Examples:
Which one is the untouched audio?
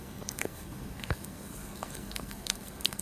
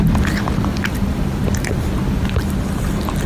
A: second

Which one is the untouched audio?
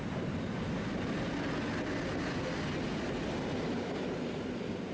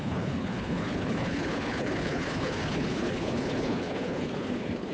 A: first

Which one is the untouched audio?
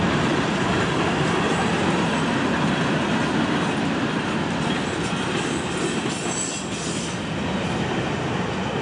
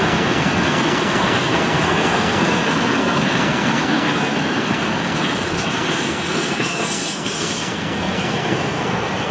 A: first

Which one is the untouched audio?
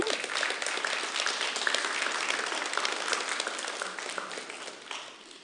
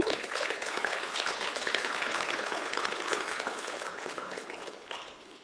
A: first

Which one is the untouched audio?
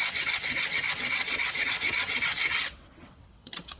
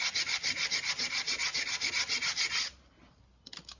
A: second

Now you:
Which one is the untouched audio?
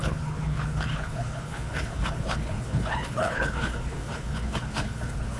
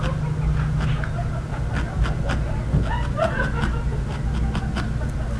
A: second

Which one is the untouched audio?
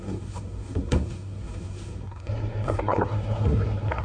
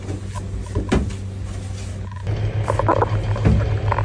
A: second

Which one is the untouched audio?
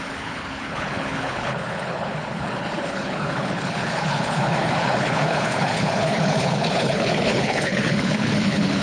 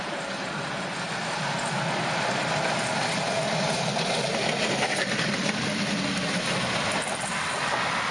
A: second